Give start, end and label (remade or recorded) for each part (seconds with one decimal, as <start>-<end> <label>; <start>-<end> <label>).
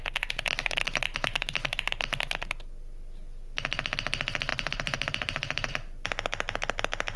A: 0.0-4.5 recorded; 4.5-5.7 remade; 5.7-7.2 recorded